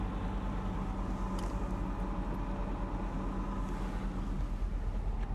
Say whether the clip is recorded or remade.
recorded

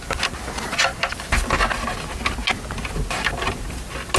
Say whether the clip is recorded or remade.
recorded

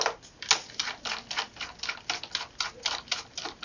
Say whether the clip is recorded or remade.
recorded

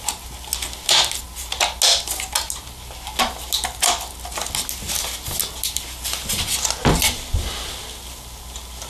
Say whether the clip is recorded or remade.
recorded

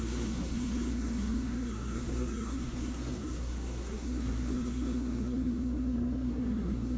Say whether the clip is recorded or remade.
remade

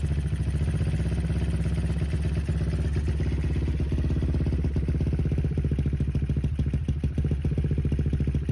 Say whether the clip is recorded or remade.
recorded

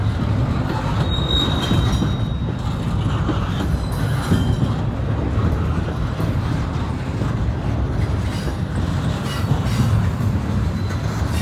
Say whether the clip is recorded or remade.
recorded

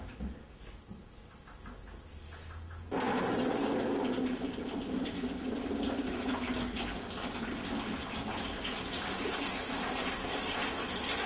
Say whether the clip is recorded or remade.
recorded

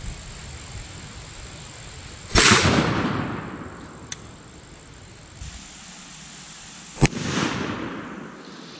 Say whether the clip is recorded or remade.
recorded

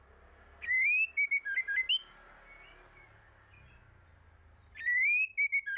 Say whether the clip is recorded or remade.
recorded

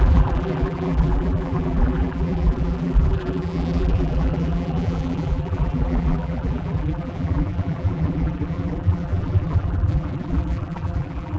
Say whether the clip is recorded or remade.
remade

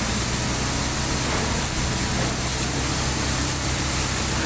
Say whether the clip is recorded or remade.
recorded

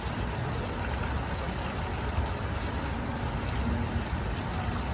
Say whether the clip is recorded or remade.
recorded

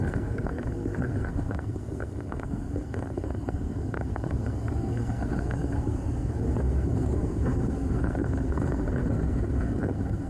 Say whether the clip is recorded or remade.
remade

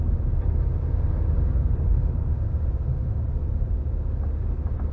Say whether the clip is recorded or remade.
recorded